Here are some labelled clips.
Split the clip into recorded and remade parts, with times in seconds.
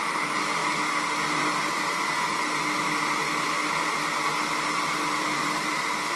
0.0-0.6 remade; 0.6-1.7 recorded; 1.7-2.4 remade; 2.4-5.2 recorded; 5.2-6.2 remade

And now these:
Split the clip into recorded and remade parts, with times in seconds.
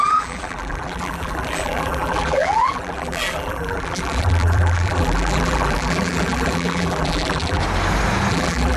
0.0-7.6 remade; 7.6-8.3 recorded; 8.3-8.8 remade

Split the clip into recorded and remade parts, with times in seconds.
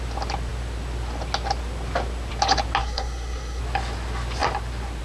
0.0-2.8 recorded; 2.8-3.6 remade; 3.6-5.0 recorded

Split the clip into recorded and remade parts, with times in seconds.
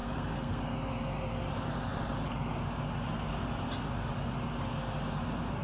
0.0-0.6 remade; 0.6-5.6 recorded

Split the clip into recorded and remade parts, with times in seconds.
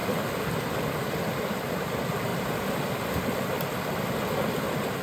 0.0-5.0 recorded